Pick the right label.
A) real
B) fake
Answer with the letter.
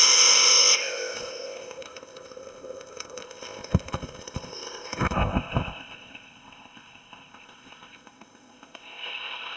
B